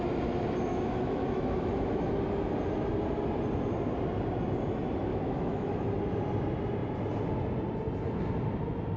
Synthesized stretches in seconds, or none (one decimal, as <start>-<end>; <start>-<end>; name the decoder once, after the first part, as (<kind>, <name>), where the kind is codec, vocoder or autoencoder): 0.7-2.1 (autoencoder, DAC-VAE); 5.1-5.8